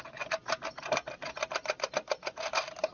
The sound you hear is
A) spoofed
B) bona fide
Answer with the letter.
B